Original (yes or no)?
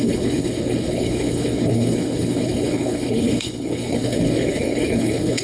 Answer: no